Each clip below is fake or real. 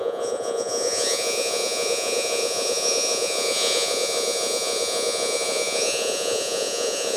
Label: fake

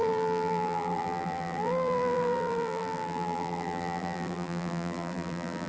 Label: fake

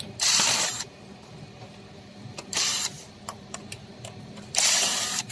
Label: fake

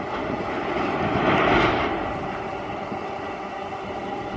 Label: real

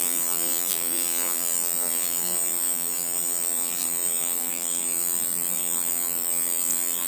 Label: fake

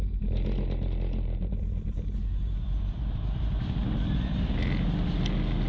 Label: real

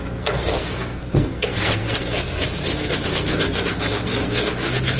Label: fake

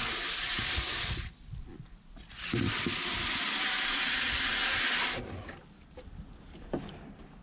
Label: real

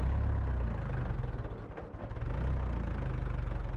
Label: real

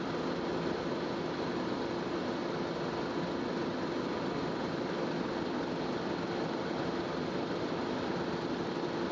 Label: real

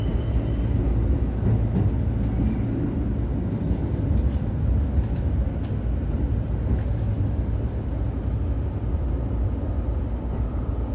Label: real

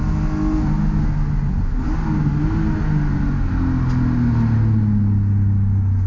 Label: real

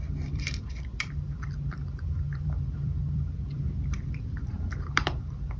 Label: fake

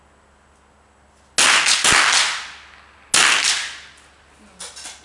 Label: real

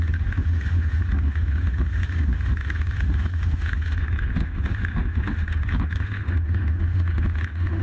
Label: fake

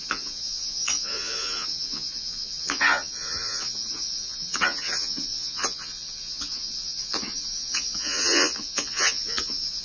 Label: fake